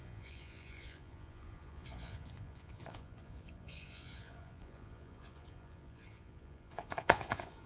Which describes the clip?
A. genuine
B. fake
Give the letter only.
B